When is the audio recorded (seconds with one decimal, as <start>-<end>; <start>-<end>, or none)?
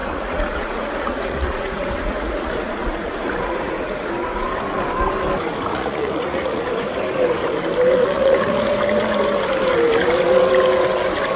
4.1-5.7; 6.6-8.0; 8.7-11.4